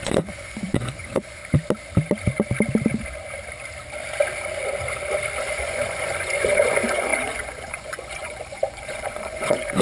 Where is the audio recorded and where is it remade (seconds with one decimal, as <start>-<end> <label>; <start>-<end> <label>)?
0.0-1.4 remade; 1.4-5.4 recorded; 5.4-9.8 remade